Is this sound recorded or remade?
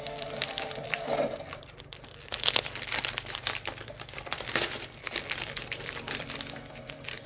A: remade